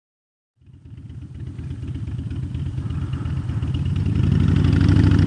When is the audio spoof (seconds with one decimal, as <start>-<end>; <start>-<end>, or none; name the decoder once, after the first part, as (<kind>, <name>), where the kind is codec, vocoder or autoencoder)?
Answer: none